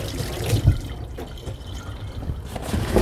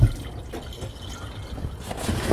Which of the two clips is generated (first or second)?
first